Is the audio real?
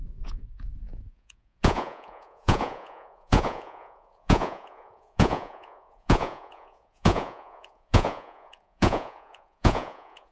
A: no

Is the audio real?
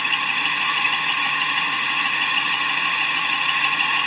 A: no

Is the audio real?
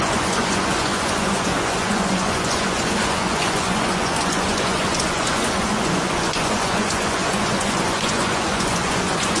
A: no